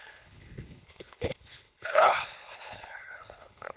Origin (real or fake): fake